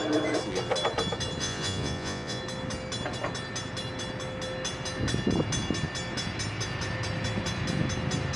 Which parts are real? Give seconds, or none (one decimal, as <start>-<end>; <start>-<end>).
0.0-1.4; 2.4-8.4